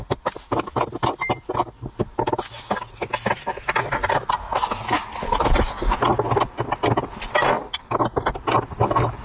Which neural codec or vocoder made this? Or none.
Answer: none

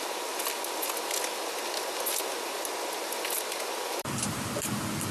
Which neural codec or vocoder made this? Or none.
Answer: none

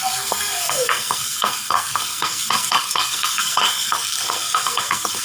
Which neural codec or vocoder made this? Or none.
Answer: codec, SNAC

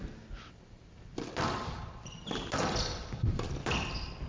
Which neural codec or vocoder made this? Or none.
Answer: none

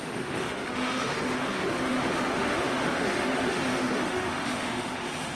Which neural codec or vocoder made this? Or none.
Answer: autoencoder, DAC-VAE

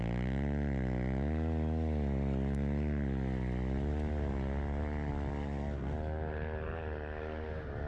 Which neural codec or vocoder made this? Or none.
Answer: none